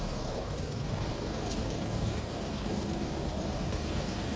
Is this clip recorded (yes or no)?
no